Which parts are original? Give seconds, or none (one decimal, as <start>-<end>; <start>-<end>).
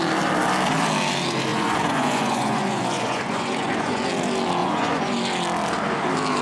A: 0.0-1.5; 4.0-4.6; 5.1-6.4